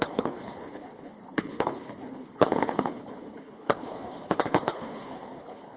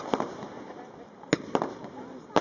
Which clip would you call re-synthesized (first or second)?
first